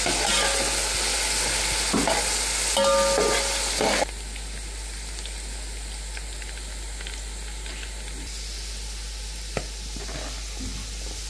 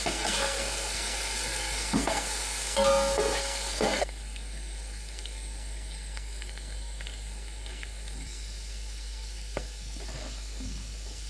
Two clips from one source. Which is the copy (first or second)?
second